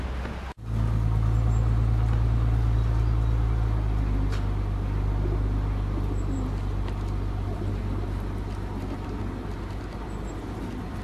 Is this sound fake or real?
real